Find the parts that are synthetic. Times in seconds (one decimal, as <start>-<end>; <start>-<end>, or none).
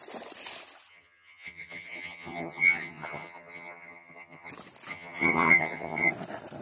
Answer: 0.9-4.5; 4.9-6.1